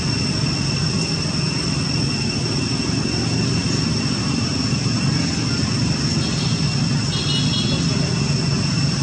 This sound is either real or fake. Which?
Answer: real